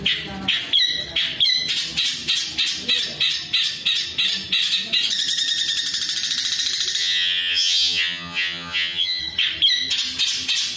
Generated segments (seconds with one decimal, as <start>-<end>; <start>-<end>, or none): 7.0-9.2